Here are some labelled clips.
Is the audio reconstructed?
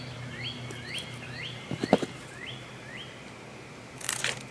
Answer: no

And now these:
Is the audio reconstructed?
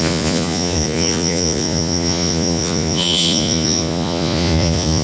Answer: yes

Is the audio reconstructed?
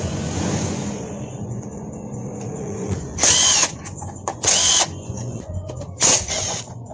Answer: yes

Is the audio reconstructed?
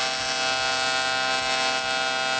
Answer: no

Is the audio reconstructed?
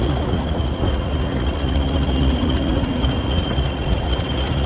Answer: yes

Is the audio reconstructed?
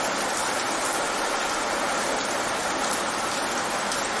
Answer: no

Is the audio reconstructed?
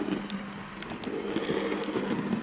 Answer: no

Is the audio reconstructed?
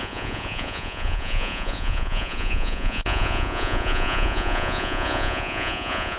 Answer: yes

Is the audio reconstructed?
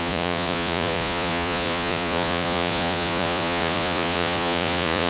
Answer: yes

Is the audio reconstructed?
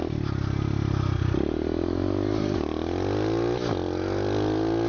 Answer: no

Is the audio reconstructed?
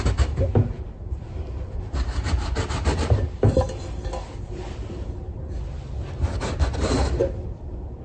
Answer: no